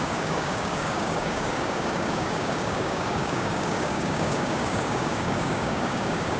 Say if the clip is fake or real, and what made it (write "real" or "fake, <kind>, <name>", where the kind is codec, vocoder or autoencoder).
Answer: fake, codec, DAC